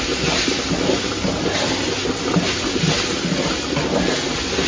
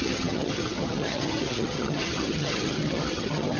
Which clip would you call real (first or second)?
first